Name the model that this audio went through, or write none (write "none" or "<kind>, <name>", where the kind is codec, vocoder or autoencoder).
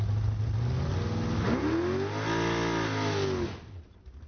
none